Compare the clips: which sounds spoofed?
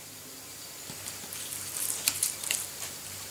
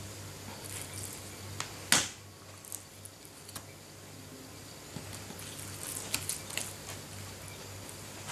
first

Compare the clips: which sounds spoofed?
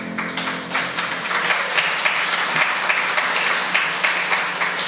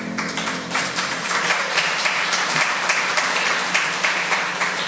second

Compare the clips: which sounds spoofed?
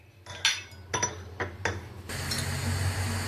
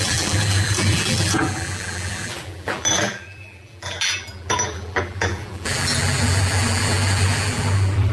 second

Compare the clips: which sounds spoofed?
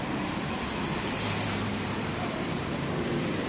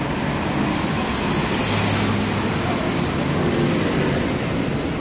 first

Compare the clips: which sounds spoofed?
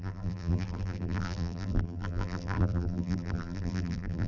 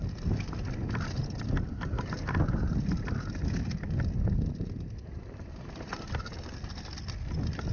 first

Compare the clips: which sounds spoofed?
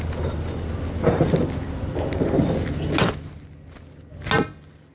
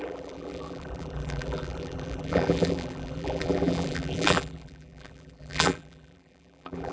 second